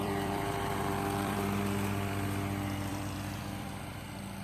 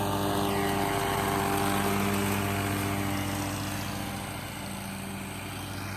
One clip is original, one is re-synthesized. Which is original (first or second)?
second